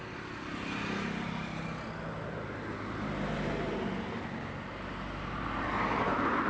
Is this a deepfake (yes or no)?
no